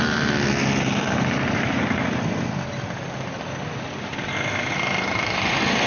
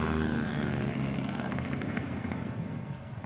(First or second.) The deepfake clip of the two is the second